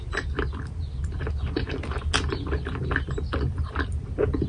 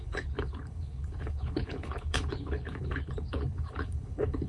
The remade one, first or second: second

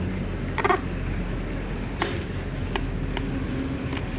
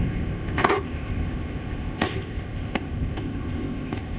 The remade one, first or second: second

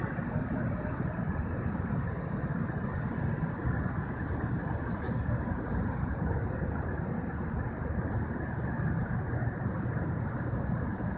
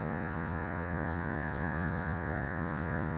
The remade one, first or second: second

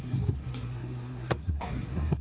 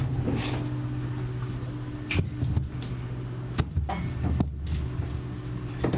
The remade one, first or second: first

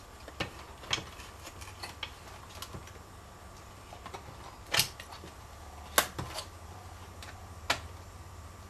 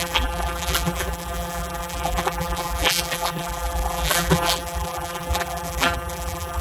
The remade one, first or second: second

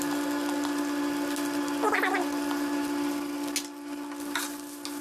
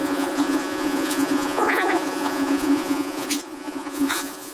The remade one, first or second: second